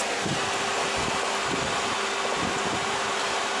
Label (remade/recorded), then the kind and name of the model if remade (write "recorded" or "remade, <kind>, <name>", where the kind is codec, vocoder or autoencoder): recorded